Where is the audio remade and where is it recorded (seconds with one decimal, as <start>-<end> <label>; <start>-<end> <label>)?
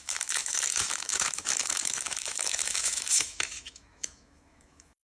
0.0-5.0 remade